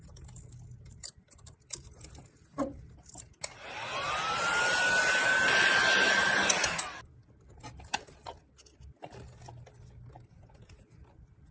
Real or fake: real